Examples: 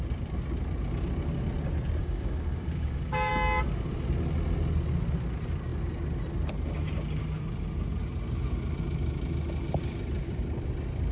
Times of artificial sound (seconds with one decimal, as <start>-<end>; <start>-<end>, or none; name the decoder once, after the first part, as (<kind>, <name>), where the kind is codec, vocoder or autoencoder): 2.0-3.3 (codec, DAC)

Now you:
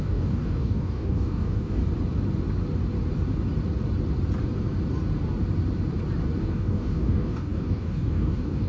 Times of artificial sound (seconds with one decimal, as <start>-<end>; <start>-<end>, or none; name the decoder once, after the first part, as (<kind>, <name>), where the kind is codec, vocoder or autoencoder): 0.0-1.8 (codec, DAC); 6.4-8.7

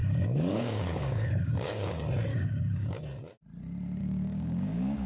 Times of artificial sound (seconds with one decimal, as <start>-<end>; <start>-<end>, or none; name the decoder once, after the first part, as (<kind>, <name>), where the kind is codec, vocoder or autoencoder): 0.0-1.9 (codec, DAC); 2.3-3.0; 4.0-5.1